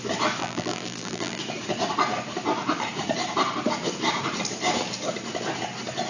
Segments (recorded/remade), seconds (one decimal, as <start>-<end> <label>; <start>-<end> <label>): 0.0-0.4 recorded; 0.4-1.4 remade; 1.4-6.1 recorded